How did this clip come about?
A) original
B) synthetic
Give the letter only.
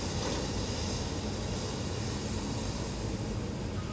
A